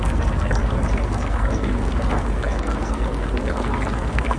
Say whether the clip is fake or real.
fake